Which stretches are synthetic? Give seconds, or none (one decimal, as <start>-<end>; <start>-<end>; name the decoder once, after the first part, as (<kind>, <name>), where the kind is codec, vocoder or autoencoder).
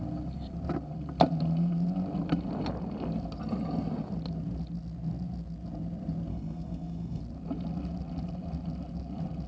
6.3-7.2 (codec, SNAC)